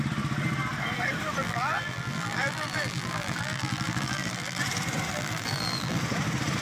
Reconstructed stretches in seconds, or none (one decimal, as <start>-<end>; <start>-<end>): 1.4-4.6; 5.1-6.0